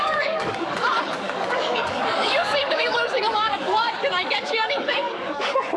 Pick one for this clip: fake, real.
fake